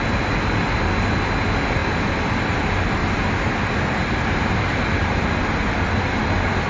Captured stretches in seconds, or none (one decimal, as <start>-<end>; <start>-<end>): 0.0-6.7